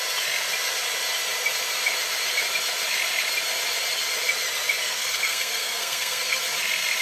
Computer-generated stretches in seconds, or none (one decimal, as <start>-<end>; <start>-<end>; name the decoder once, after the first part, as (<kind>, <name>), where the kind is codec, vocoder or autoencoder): 4.8-6.4 (codec, SNAC)